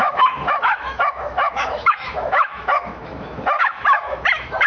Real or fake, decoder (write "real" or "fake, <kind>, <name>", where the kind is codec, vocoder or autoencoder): fake, autoencoder, DAC-VAE